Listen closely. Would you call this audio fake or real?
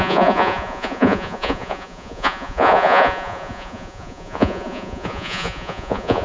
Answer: fake